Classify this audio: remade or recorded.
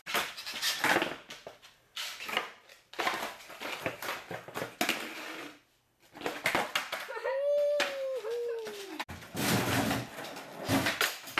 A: recorded